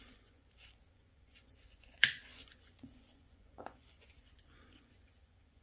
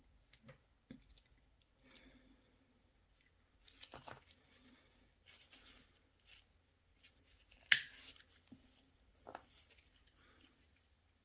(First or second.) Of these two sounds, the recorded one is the second